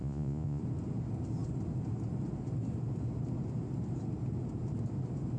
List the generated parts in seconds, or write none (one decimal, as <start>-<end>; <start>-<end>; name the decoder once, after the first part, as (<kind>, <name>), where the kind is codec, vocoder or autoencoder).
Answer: 0.0-0.6 (vocoder, Vocos)